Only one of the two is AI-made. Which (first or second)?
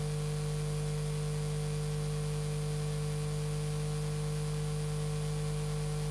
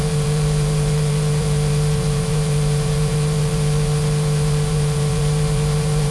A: second